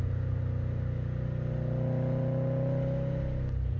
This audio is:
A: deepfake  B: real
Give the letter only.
B